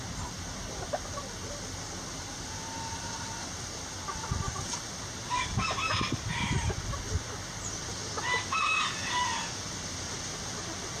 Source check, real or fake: real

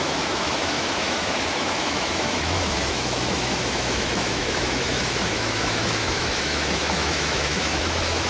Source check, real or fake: fake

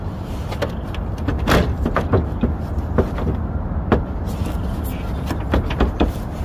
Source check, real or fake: real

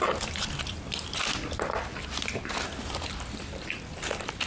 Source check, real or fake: real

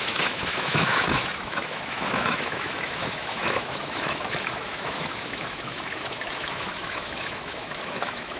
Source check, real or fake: fake